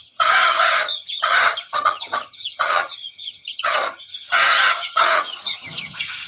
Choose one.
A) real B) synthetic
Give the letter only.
B